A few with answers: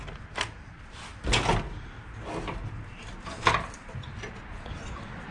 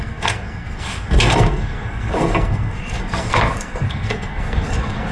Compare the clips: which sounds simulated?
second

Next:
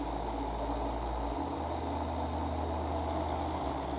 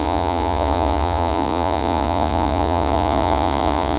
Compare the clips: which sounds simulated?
second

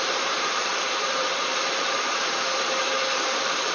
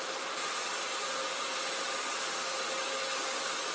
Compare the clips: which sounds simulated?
first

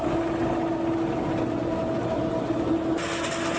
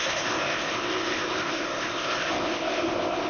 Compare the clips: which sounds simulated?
second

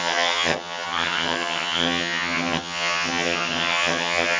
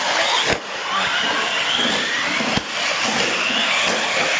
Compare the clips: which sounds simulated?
first